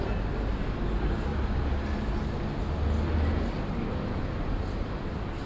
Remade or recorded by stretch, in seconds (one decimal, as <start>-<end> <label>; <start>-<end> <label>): 0.0-5.5 recorded